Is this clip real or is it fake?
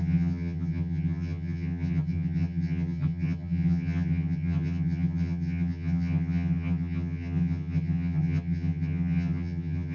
fake